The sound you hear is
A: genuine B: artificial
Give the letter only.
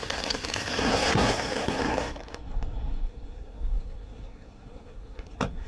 B